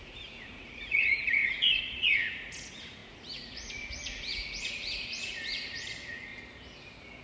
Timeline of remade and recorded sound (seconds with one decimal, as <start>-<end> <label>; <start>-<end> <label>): 0.0-6.3 remade; 6.3-7.2 recorded